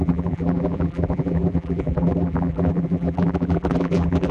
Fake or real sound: fake